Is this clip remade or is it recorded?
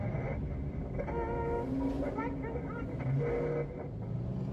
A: recorded